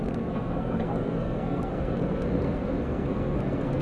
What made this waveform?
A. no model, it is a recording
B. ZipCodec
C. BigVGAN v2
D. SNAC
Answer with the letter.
D